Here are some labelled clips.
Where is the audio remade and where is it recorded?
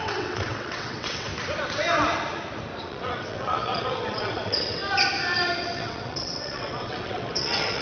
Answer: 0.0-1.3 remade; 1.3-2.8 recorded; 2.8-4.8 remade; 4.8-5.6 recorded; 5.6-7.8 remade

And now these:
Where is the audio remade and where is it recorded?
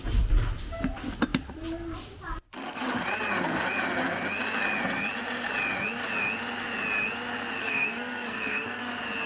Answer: 0.0-7.6 recorded; 7.6-8.8 remade; 8.8-9.3 recorded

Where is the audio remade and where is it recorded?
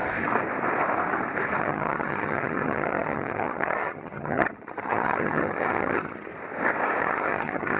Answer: 0.0-1.6 recorded; 1.6-6.3 remade; 6.3-7.0 recorded; 7.0-7.8 remade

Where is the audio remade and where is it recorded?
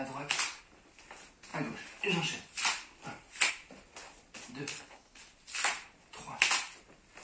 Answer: 0.0-4.7 recorded; 4.7-5.2 remade; 5.2-7.2 recorded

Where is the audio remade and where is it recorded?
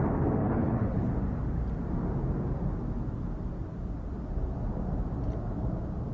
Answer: 0.0-0.4 recorded; 0.4-1.1 remade; 1.1-6.1 recorded